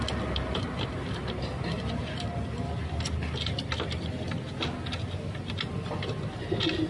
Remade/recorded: recorded